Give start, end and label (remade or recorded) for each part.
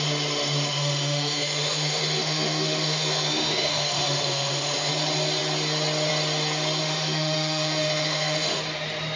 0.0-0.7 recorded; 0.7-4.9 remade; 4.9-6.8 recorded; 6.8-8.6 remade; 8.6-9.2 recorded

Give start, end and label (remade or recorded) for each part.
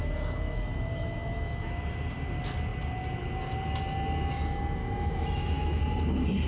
0.0-4.8 recorded; 4.8-5.8 remade; 5.8-6.5 recorded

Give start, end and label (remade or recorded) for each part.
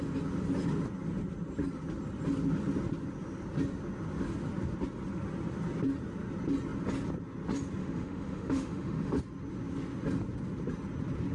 0.0-7.8 recorded; 7.8-9.2 remade; 9.2-11.3 recorded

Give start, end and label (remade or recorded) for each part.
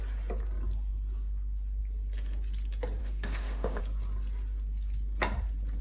0.0-3.0 recorded; 3.0-3.8 remade; 3.8-5.8 recorded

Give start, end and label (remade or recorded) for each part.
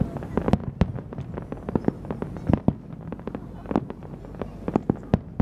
0.0-5.4 recorded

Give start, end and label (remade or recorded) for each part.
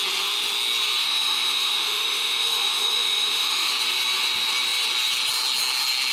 0.0-1.0 recorded; 1.0-3.7 remade; 3.7-6.1 recorded